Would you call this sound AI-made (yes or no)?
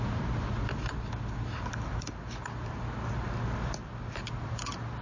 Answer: no